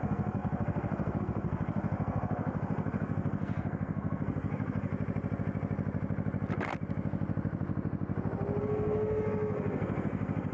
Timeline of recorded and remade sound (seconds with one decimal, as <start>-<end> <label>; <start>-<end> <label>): 0.0-4.9 remade; 4.9-8.6 recorded; 8.6-10.5 remade